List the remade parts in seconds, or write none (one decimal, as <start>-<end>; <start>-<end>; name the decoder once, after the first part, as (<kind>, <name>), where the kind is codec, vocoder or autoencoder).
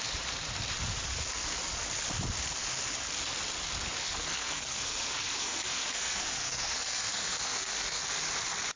4.0-8.0 (codec, SNAC)